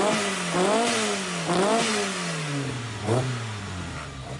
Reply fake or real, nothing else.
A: real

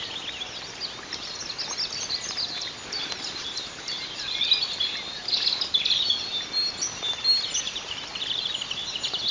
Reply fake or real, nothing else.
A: real